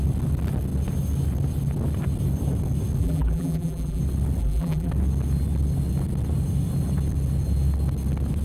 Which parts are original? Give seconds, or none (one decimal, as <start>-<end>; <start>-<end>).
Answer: 0.0-3.0; 4.0-4.4; 4.9-8.4